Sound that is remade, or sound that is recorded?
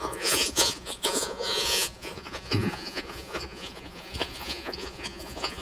remade